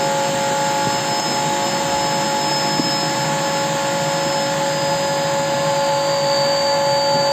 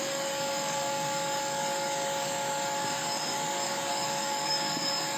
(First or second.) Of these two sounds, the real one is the first